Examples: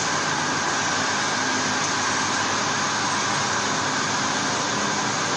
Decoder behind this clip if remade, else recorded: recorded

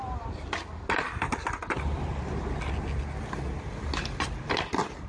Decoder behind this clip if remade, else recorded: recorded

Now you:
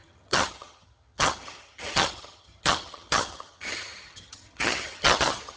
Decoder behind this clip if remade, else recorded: remade, vocoder, HiFi-GAN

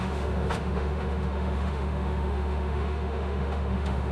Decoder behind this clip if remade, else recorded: remade, autoencoder, DAC-VAE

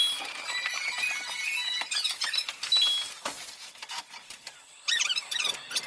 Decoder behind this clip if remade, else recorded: recorded